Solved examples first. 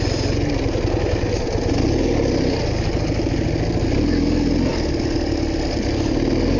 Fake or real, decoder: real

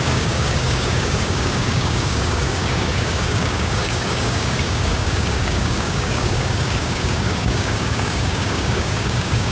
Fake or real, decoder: fake, codec, DAC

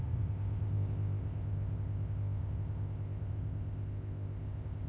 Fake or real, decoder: fake, codec, ZipCodec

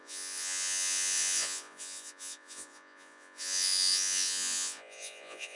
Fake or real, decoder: fake, vocoder, Vocos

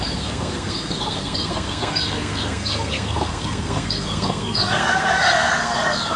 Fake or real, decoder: fake, codec, SNAC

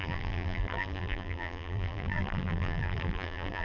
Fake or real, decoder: fake, vocoder, BigVGAN v2